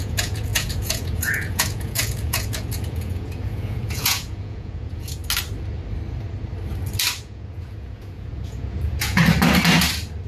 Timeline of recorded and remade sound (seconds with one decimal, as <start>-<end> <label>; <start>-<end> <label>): 0.0-5.2 remade; 5.2-7.2 recorded; 7.2-9.2 remade; 9.2-10.3 recorded